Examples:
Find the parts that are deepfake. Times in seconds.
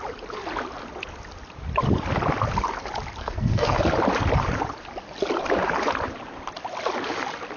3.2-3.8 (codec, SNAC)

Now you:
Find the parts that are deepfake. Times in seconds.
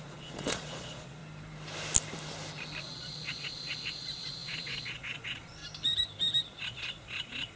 0.0-1.2 (vocoder, Vocos); 2.8-5.6; 6.6-7.6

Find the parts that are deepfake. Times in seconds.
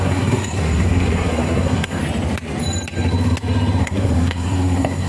0.0-2.0 (codec, SNAC); 3.8-5.1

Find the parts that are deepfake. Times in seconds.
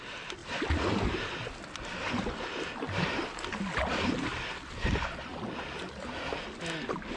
none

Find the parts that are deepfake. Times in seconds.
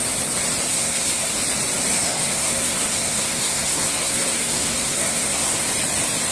0.7-1.3 (codec, SNAC); 1.9-5.7